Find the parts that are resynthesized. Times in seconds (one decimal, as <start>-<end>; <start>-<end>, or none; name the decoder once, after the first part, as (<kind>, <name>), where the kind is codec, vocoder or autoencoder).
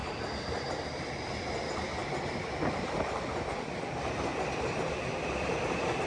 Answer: none